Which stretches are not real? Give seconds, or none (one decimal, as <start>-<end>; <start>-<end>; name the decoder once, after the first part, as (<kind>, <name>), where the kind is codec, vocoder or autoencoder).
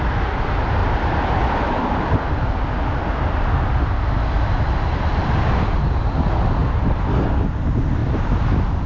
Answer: 0.8-4.2 (vocoder, BigVGAN v2); 6.6-7.2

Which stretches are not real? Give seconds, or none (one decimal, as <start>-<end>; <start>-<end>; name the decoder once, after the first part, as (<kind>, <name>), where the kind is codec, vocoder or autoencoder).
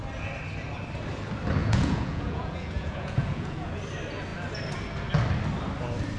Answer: 1.6-3.8 (vocoder, Vocos)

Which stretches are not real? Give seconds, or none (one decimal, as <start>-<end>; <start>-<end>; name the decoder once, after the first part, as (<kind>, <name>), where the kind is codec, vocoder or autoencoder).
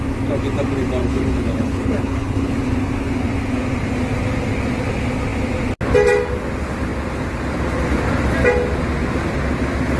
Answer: 1.0-2.5 (codec, HILCodec)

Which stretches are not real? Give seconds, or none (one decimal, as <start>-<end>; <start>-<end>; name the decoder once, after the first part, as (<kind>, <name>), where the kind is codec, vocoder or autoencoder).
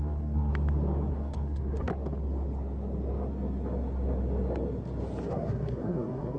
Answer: 0.0-0.5 (codec, SNAC); 1.1-1.9; 5.3-6.4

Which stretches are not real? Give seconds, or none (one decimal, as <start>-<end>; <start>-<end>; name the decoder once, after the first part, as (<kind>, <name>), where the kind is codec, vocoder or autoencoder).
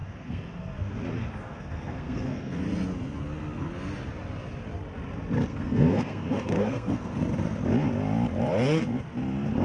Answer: 0.0-0.9 (codec, SNAC); 1.4-2.6; 5.5-7.2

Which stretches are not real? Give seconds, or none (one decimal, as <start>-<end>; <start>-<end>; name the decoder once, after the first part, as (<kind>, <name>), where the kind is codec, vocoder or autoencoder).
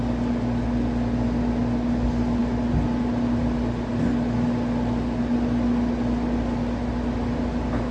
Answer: none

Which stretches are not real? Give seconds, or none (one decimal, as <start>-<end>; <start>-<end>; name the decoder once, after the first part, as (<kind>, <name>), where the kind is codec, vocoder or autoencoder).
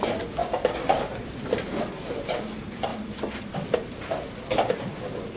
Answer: 2.9-4.8 (vocoder, BigVGAN v2)